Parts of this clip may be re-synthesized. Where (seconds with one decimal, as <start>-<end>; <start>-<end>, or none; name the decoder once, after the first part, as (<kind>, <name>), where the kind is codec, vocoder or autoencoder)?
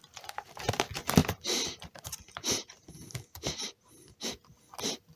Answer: 0.0-0.7 (vocoder, BigVGAN v2); 1.2-4.3